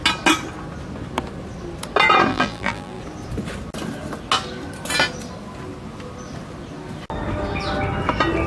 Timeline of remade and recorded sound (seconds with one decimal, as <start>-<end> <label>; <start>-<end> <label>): 0.0-2.3 recorded; 2.3-3.0 remade; 3.0-8.5 recorded